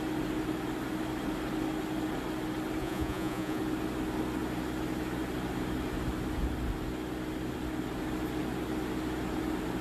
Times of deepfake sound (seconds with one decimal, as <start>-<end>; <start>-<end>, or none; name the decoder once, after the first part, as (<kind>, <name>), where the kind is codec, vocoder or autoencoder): 2.8-3.6 (vocoder, Vocos)